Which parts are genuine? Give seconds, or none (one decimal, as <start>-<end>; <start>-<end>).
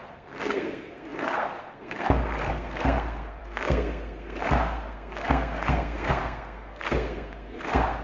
none